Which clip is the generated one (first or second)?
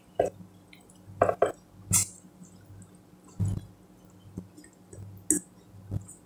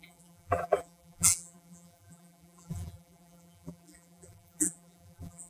second